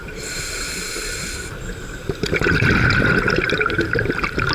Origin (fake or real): fake